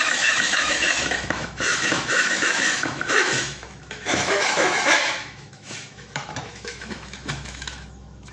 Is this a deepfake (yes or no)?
yes